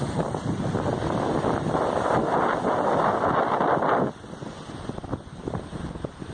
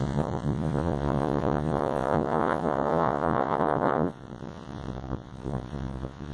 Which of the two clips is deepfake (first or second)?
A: second